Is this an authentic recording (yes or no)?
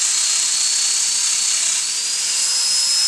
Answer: yes